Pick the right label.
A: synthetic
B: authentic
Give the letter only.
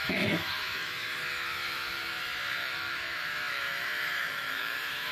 A